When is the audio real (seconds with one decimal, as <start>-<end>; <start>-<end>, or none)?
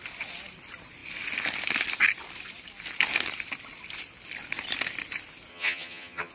0.0-5.5